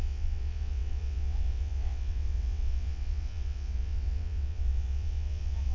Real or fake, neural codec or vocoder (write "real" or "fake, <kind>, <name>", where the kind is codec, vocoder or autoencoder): fake, vocoder, WaveNeXt